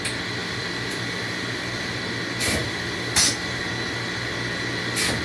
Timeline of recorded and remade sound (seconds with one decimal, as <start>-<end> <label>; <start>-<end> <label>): 0.0-0.4 recorded; 0.4-2.0 remade; 2.0-2.6 recorded; 2.6-3.6 remade; 3.6-5.2 recorded